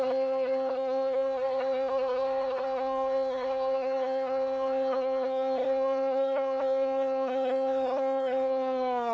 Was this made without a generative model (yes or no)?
no